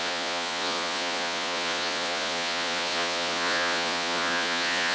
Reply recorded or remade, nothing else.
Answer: remade